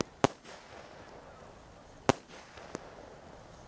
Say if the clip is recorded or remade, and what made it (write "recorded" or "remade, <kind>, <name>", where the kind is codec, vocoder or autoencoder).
recorded